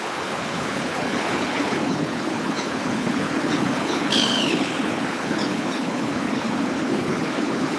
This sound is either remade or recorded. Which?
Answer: remade